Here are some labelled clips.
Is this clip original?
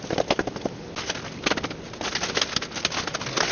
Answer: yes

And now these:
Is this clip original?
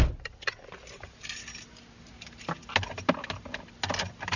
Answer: yes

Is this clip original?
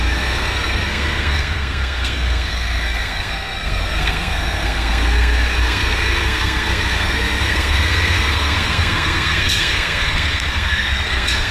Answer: no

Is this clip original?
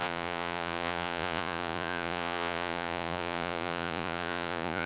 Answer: no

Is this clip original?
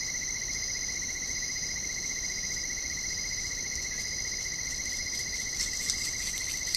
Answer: yes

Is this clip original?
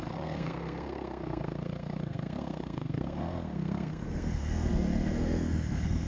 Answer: no